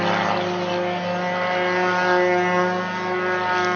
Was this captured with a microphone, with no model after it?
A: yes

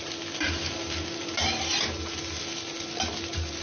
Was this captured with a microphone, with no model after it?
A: yes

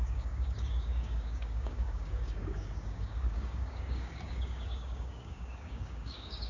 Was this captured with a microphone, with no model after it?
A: no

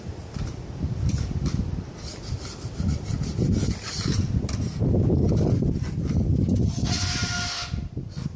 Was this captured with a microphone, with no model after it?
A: yes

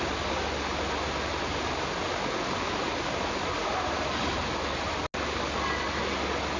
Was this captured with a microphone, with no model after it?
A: yes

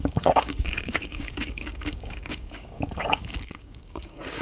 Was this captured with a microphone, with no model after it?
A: no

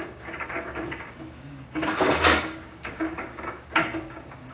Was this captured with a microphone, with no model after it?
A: no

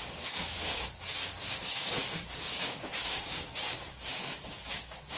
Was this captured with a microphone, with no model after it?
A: no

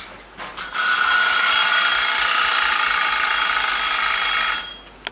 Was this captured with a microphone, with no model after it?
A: yes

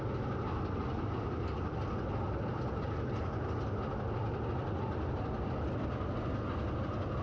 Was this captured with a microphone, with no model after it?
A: yes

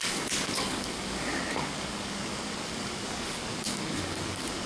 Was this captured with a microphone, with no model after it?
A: no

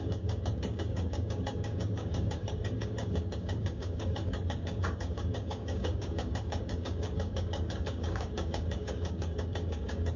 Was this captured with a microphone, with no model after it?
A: no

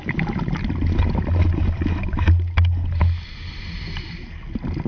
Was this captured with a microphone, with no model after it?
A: yes